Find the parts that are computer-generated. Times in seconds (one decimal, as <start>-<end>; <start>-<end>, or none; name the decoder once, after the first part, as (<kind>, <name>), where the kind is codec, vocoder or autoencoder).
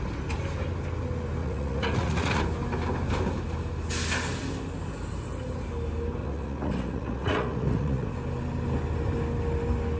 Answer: 1.4-2.4 (vocoder, Vocos); 6.2-8.1